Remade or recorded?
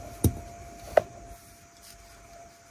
recorded